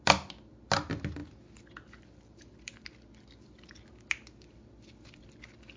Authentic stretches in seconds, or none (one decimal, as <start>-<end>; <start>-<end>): 0.0-5.8